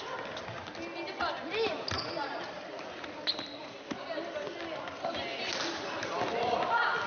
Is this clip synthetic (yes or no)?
no